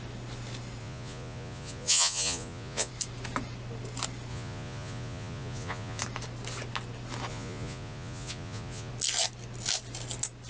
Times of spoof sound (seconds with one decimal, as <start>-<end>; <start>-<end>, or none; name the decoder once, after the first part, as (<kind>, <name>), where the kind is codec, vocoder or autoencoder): 0.8-2.9 (vocoder, Vocos); 4.3-6.0; 7.3-8.9